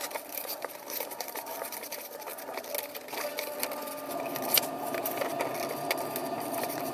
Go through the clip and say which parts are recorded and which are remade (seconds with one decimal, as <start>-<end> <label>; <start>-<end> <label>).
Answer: 0.0-2.3 remade; 2.3-4.2 recorded; 4.2-5.3 remade; 5.3-6.3 recorded; 6.3-6.9 remade